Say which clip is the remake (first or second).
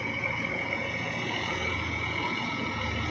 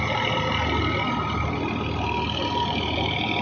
first